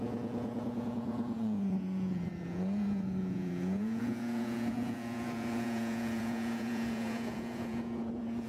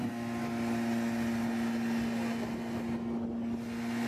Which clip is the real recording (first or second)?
second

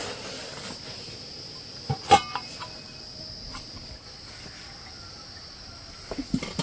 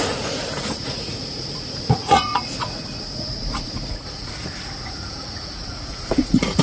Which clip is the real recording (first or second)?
first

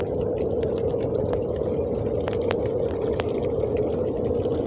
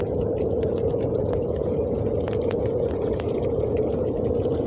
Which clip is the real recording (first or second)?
first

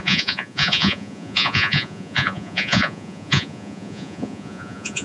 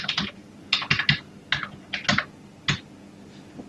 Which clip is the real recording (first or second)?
second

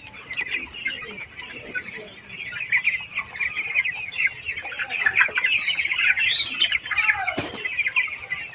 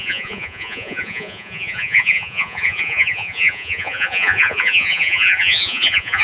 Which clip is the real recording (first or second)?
first